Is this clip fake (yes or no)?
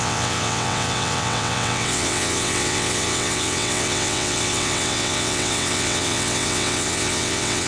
yes